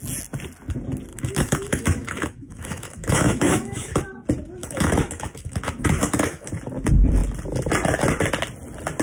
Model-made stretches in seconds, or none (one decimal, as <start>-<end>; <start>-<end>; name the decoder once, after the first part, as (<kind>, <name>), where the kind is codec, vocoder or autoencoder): 1.1-4.0 (autoencoder, DAC-VAE); 4.6-6.5